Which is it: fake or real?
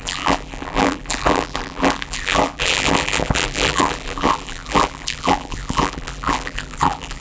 fake